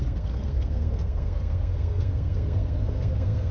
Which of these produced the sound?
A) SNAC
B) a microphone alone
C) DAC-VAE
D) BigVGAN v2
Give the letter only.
A